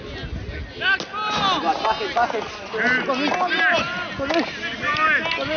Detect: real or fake real